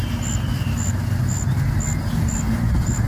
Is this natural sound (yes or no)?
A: yes